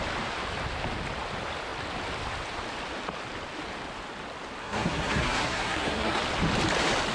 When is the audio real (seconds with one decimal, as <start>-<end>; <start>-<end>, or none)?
0.0-4.6; 6.2-7.1